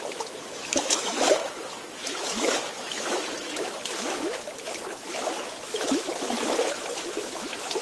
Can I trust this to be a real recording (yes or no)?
no